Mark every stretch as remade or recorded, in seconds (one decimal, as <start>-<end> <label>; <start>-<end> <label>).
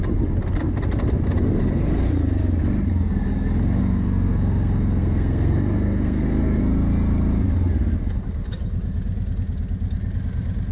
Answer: 0.0-3.8 recorded; 3.8-6.6 remade; 6.6-10.7 recorded